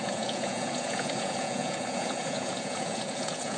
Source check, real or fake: fake